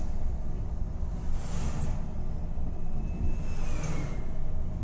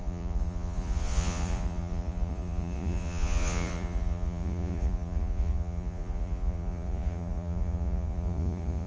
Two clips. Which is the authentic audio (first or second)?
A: first